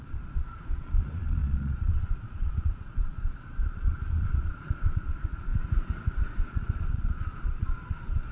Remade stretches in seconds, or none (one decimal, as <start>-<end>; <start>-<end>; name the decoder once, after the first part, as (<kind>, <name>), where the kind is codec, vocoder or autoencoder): 0.0-5.5 (vocoder, Vocos); 6.2-8.3

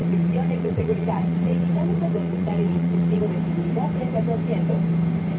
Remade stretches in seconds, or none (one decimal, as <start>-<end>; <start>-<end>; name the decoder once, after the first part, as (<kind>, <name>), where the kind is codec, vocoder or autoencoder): 0.0-3.2 (vocoder, Vocos)

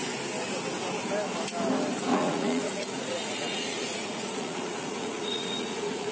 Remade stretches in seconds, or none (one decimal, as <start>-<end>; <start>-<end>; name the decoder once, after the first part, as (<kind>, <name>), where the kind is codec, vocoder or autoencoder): 2.1-6.1 (vocoder, Vocos)

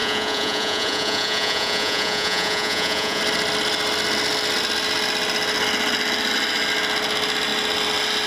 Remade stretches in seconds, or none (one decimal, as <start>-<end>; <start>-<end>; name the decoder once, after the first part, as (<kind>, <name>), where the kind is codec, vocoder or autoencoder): 0.0-3.2 (vocoder, Vocos)

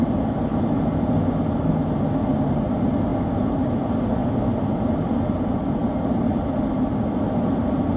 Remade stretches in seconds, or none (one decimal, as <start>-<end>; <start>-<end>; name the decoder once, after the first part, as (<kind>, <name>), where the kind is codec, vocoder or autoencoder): none

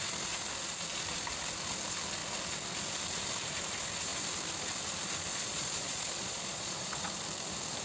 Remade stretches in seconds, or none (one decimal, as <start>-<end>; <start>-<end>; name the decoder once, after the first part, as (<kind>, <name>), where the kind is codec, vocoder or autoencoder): 5.3-7.0 (vocoder, Vocos)

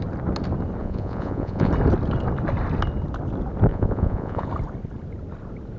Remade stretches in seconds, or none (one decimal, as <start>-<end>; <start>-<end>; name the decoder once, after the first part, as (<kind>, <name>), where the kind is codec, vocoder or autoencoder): 0.8-1.7 (vocoder, Vocos); 3.7-4.5